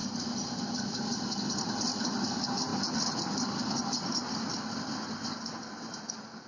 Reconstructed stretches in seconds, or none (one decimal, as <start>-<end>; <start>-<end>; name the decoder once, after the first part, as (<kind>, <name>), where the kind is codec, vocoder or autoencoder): none